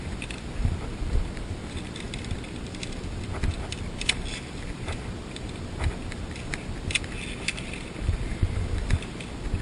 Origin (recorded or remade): remade